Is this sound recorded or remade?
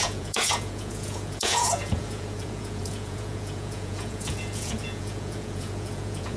remade